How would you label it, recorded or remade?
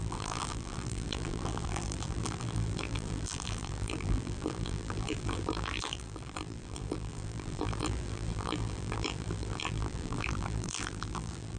remade